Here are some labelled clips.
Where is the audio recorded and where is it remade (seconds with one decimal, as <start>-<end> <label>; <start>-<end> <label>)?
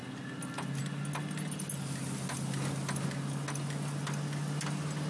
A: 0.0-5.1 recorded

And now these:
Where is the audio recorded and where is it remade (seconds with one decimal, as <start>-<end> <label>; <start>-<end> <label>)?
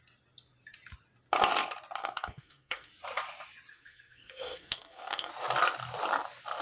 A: 0.0-2.0 recorded; 2.0-2.9 remade; 2.9-3.7 recorded; 3.7-5.3 remade; 5.3-6.6 recorded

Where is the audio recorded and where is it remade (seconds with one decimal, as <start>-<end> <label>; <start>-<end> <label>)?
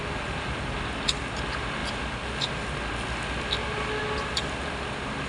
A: 0.0-5.3 recorded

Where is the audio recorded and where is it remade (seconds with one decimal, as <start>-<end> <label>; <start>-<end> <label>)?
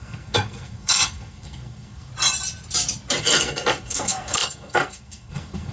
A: 0.0-2.1 remade; 2.1-3.2 recorded; 3.2-5.7 remade